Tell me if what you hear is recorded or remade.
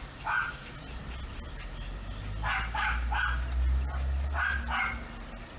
recorded